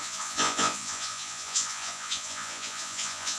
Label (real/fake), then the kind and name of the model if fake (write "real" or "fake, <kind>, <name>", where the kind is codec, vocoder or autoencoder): fake, vocoder, Vocos